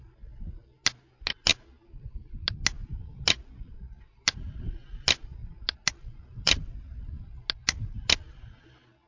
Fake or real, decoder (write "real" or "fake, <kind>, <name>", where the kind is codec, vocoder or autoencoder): real